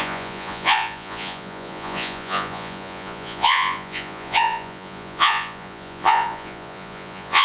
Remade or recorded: remade